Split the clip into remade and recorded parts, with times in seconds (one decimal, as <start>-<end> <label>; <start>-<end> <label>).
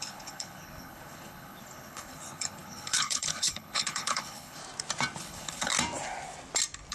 0.0-4.6 remade; 4.6-5.2 recorded; 5.2-5.7 remade; 5.7-6.9 recorded